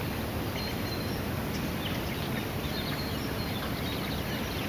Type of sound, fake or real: real